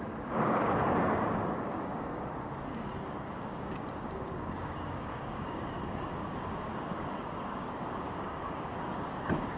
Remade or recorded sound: remade